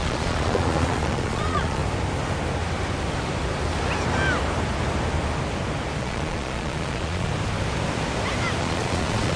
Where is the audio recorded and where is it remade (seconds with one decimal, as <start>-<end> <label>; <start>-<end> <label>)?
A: 0.0-1.8 remade; 1.8-6.0 recorded; 6.0-7.3 remade; 7.3-8.6 recorded; 8.6-9.4 remade